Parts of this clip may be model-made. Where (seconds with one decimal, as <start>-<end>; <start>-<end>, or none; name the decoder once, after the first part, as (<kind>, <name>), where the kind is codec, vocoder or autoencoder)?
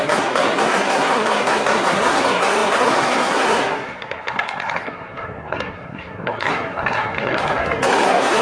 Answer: 0.0-8.4 (codec, SNAC)